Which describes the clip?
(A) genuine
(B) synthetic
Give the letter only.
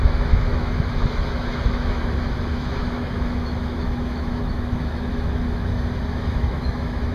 B